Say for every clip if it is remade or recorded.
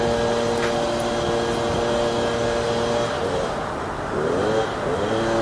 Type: recorded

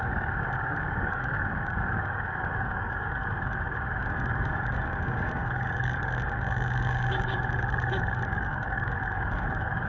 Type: remade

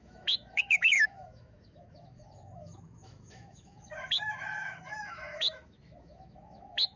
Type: remade